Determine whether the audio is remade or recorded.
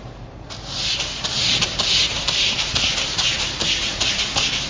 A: remade